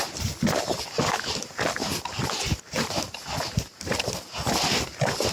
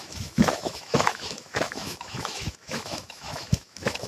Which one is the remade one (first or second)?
second